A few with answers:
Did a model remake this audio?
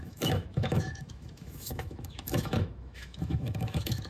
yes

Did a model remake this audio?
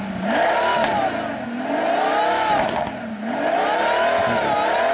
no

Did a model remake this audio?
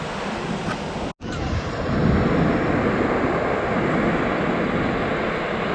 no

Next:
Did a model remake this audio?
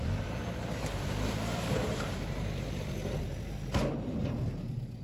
yes